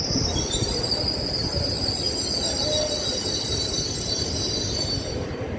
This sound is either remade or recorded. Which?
recorded